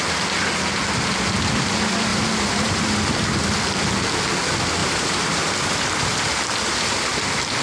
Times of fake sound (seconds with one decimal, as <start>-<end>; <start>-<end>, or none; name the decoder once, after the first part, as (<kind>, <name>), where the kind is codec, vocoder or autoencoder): 2.1-3.1 (vocoder, BigVGAN v2); 4.8-5.9